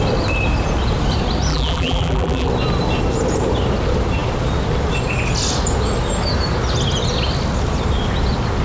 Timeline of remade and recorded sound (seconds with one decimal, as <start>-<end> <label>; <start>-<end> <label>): 0.0-1.5 recorded; 1.5-2.5 remade; 2.5-8.6 recorded